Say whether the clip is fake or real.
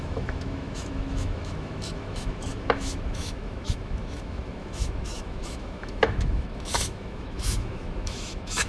fake